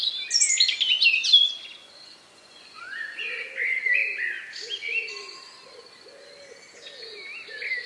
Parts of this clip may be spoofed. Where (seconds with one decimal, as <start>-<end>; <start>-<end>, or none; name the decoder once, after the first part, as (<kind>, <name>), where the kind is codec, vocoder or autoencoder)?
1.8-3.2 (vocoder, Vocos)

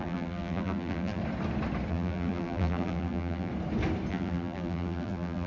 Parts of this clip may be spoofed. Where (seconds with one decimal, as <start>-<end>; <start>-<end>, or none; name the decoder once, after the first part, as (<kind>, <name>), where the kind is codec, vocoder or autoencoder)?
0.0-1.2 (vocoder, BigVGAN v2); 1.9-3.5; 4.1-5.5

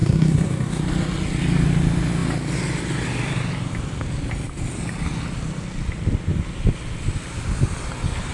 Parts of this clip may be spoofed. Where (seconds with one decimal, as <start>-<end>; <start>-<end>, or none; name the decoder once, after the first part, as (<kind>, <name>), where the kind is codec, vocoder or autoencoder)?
0.0-0.8 (codec, SNAC)